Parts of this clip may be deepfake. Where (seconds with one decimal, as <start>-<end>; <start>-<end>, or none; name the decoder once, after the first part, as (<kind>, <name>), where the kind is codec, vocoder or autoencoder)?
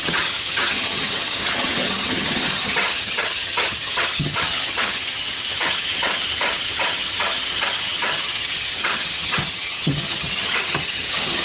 0.0-11.4 (vocoder, HiFi-GAN)